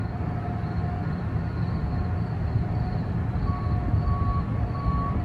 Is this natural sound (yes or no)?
yes